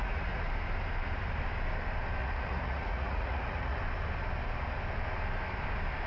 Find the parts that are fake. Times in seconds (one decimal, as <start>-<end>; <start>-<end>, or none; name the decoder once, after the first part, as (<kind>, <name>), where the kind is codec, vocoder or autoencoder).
0.0-0.5 (vocoder, Vocos); 2.2-3.8

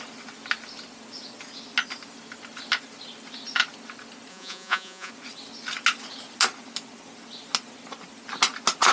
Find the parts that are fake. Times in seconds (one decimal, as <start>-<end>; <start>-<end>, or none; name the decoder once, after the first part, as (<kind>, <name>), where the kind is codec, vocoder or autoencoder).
4.3-5.1 (vocoder, Vocos)